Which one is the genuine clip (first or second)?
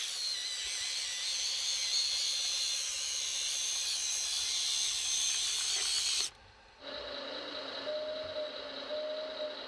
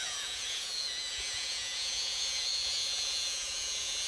first